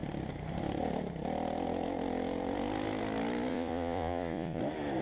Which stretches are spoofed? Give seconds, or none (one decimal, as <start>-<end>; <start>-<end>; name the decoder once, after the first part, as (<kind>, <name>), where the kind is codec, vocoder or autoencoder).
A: 3.5-4.6 (vocoder, Vocos)